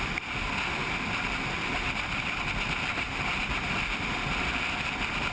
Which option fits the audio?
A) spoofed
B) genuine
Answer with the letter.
A